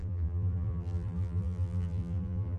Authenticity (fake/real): fake